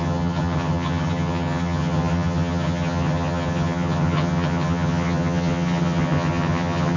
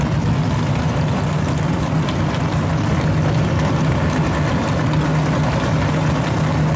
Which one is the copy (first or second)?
first